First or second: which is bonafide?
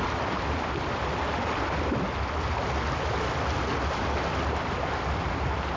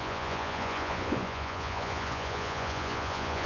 first